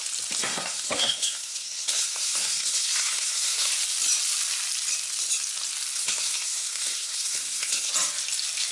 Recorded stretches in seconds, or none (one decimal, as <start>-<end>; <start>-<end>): 0.0-0.4; 3.7-6.0; 7.9-8.7